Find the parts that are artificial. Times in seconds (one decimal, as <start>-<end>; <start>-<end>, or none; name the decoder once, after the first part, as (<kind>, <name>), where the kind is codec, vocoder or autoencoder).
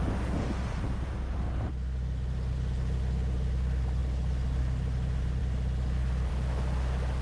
none